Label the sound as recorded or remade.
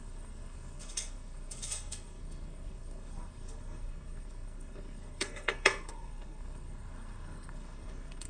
remade